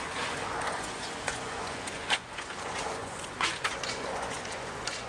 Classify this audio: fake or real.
fake